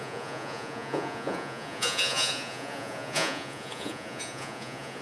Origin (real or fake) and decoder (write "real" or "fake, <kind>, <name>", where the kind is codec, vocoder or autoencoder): fake, vocoder, Vocos